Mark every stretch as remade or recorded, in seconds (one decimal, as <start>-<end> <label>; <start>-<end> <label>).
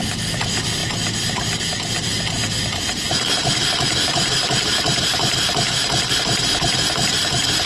0.0-7.7 recorded